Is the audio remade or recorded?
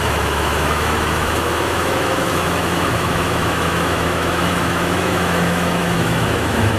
remade